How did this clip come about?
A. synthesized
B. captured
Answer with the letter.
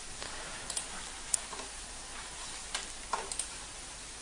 B